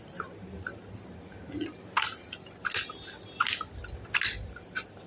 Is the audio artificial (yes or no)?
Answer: no